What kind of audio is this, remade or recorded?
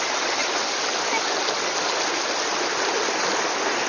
recorded